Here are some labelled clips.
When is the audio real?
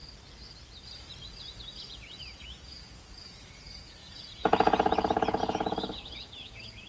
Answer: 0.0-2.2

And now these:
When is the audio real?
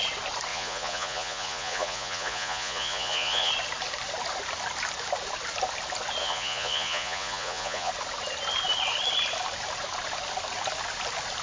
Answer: 0.0-0.5; 3.5-6.2; 7.9-11.4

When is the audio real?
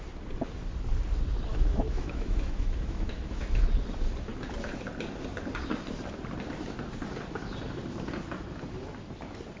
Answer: 0.0-1.5; 3.6-9.6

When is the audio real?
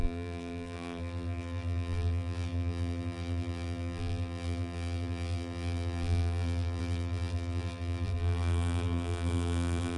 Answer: none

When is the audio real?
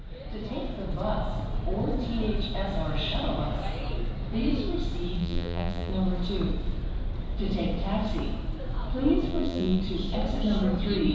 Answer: 0.0-5.2; 5.9-9.3; 9.8-11.1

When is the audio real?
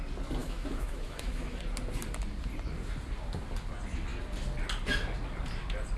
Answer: 0.0-0.4; 1.6-6.0